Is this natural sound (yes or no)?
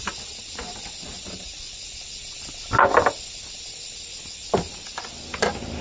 yes